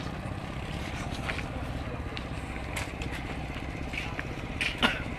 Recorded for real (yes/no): yes